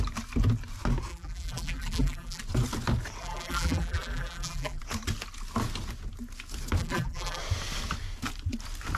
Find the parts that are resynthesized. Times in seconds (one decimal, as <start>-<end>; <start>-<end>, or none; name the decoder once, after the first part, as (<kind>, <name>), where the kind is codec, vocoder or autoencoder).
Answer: 1.1-2.4 (vocoder, BigVGAN v2); 3.2-4.8; 6.8-7.4